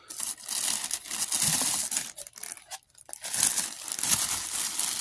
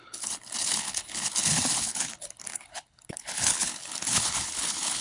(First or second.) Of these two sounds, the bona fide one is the first